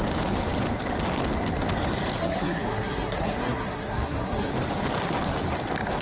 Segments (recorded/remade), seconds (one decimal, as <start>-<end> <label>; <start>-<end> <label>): 0.0-2.2 recorded; 2.2-4.5 remade; 4.5-6.0 recorded